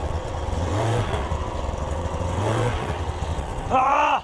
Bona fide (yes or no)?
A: no